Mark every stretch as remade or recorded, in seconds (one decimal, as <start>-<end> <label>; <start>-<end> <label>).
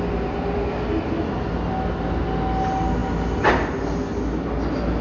0.0-5.0 recorded